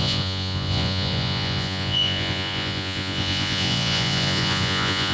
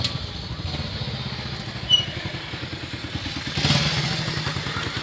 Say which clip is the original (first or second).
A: second